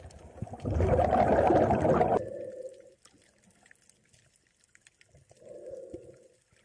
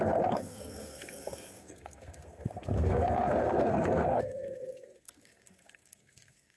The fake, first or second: second